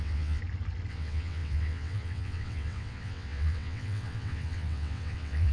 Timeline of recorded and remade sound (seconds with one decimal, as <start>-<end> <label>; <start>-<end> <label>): 0.0-0.4 remade; 0.4-0.9 recorded; 0.9-5.5 remade